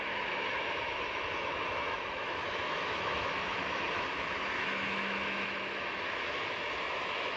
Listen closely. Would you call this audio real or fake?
fake